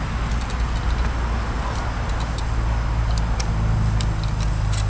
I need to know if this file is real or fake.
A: real